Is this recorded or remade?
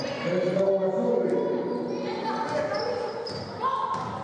recorded